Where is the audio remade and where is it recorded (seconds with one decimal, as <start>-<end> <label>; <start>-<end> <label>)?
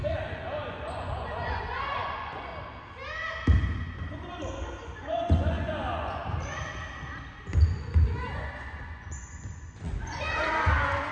0.0-2.5 remade; 2.5-3.8 recorded; 3.8-6.2 remade; 6.2-7.3 recorded; 7.3-11.1 remade